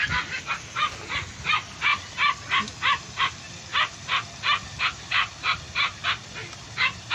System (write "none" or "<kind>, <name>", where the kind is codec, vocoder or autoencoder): none